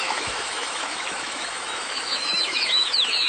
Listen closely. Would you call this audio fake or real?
fake